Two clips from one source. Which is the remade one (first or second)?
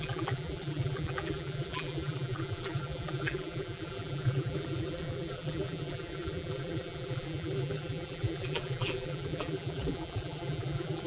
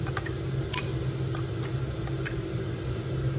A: first